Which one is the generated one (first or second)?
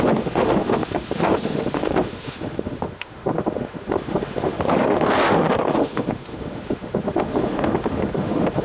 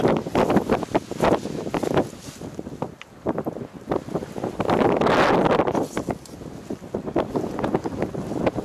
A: first